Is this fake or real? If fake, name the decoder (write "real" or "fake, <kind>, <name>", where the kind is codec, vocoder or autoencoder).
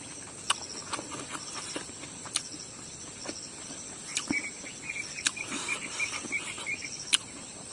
real